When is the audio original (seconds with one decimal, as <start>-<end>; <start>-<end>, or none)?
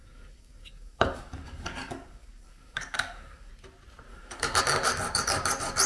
3.5-4.1; 4.6-5.9